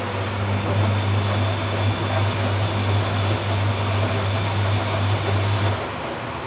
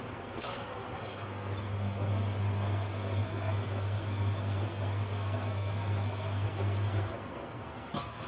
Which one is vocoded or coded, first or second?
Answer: second